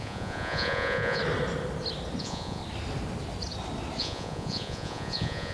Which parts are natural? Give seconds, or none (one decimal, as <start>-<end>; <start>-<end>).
1.2-2.2; 2.6-4.0